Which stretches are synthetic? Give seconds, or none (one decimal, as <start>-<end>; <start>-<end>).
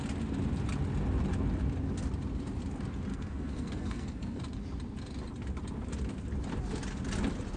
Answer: 3.1-4.4